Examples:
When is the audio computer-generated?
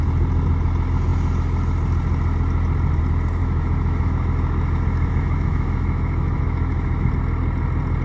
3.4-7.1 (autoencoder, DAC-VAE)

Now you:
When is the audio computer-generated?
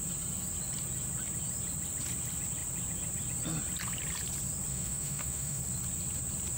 4.7-5.6 (autoencoder, DAC-VAE)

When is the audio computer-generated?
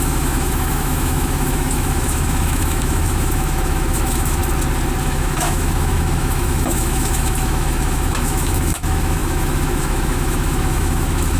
0.0-4.4 (autoencoder, DAC-VAE); 5.0-11.4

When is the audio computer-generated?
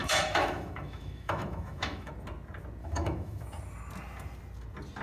0.0-2.1 (autoencoder, DAC-VAE); 2.8-3.4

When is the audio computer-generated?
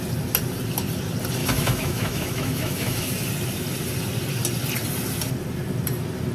1.4-3.1 (autoencoder, DAC-VAE)